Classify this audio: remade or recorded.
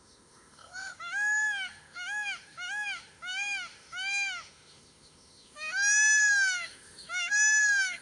remade